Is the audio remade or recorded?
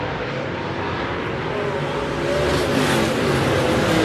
recorded